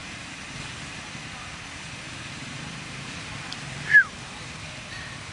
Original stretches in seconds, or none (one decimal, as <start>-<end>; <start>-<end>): 0.0-5.3